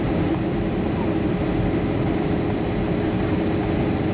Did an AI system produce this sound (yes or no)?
no